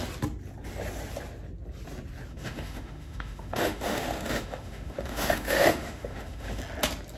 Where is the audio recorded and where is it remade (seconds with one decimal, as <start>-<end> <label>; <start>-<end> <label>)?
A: 0.0-2.3 recorded; 2.3-6.6 remade; 6.6-7.2 recorded